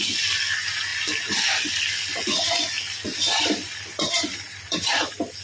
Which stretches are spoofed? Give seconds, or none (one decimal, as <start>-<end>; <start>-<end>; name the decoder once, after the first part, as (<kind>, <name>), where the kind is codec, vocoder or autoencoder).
none